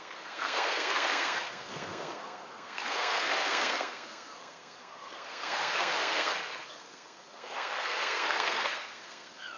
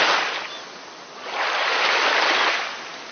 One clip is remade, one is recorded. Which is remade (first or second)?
first